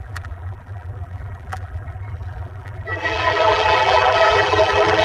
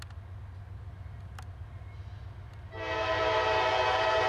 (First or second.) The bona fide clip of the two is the second